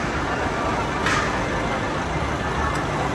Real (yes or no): yes